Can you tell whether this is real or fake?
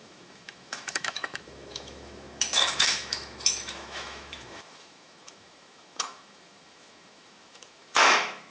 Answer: fake